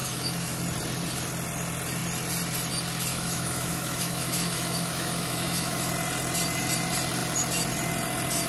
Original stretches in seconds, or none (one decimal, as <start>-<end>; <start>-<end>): 0.6-3.1; 5.9-8.5